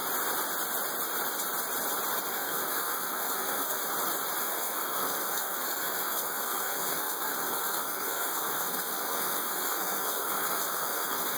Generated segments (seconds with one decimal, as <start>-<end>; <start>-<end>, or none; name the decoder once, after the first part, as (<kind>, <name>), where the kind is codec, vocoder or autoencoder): 2.3-3.8 (codec, SNAC); 4.4-11.4

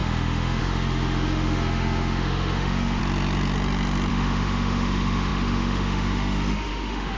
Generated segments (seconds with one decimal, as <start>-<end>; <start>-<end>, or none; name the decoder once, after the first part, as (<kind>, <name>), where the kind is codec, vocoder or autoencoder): 0.0-3.0 (autoencoder, DAC-VAE); 4.1-7.2

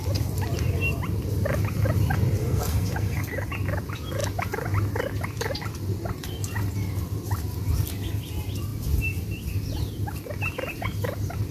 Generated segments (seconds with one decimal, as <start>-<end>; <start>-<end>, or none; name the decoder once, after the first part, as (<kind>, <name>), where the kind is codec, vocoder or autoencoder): 2.4-3.3 (codec, SNAC)

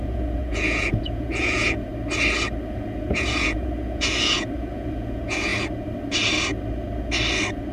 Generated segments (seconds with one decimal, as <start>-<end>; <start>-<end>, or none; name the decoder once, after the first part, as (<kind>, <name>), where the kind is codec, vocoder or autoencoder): 0.0-1.9 (vocoder, Vocos); 2.6-5.5

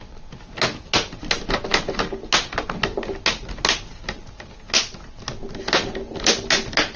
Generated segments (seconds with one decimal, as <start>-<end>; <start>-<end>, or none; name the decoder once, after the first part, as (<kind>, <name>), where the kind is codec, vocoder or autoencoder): none